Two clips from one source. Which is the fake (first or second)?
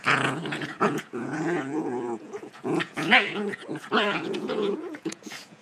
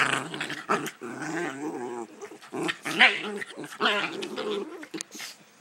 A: first